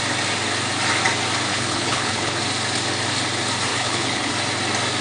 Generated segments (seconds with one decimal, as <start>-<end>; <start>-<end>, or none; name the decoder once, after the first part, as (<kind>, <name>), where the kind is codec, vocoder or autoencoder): 1.5-2.4 (codec, HILCodec); 3.7-4.3